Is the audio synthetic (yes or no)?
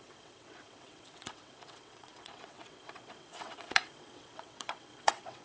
yes